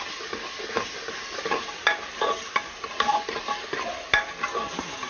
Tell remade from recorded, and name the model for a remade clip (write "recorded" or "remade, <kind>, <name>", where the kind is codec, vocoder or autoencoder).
recorded